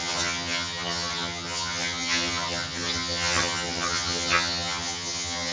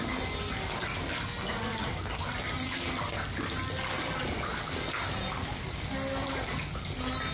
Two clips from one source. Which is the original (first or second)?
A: second